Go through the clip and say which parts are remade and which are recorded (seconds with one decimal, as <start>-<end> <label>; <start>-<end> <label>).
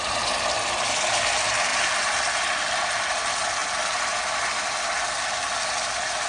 0.0-6.3 recorded